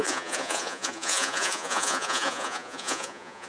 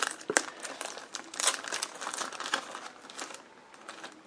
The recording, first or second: second